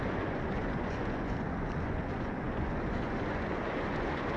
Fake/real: fake